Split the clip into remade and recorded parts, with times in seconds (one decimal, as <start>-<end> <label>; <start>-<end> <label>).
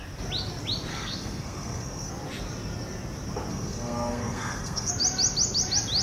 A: 0.0-0.9 recorded; 0.9-2.1 remade; 2.1-3.5 recorded; 3.5-4.9 remade; 4.9-6.0 recorded